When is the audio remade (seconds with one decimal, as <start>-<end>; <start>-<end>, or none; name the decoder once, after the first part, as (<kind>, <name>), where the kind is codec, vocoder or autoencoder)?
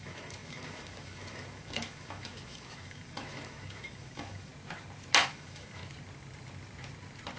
0.0-4.5 (autoencoder, DAC-VAE); 5.2-5.8